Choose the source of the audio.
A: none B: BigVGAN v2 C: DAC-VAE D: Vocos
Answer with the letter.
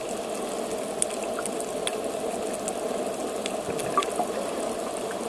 A